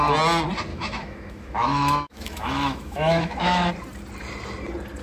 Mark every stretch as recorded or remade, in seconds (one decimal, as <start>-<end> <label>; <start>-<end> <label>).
0.0-0.7 recorded; 0.7-3.7 remade; 3.7-5.0 recorded